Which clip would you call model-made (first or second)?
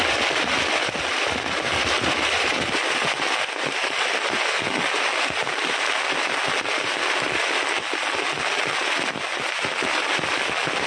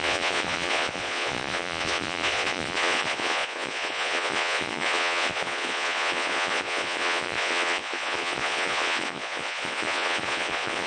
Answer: second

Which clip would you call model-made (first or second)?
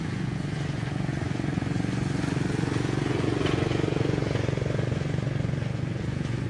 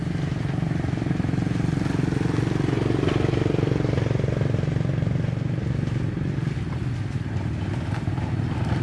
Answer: first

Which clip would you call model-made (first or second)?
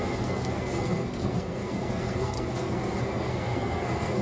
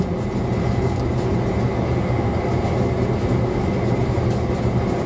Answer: first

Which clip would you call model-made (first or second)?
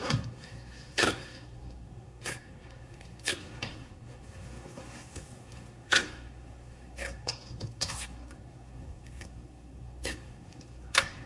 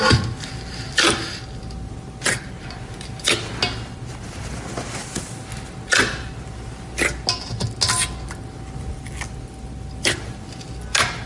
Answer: first